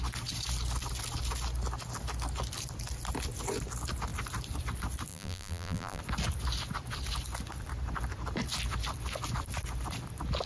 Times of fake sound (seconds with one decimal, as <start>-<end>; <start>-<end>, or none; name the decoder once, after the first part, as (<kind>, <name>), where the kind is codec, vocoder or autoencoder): 5.1-6.0 (vocoder, BigVGAN v2)

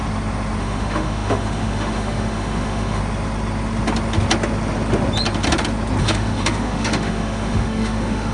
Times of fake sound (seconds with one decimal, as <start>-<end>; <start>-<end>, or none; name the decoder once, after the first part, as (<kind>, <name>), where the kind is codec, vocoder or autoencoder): 0.6-3.0 (autoencoder, DAC-VAE); 6.0-8.3